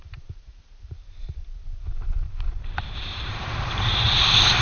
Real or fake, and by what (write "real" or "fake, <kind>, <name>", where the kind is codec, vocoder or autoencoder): fake, vocoder, BigVGAN v2